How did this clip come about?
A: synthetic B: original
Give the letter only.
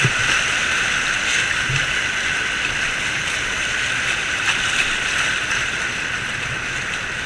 B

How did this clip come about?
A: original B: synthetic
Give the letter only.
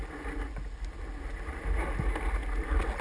A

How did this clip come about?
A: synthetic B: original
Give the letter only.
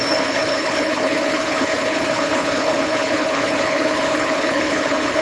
A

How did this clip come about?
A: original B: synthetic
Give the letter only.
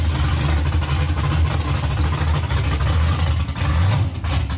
A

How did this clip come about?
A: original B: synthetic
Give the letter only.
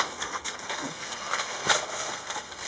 B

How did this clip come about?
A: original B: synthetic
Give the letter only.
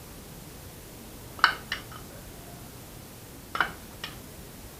A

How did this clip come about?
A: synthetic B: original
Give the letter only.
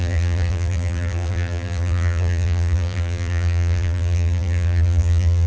A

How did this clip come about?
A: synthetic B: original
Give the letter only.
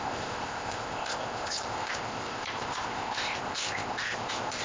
A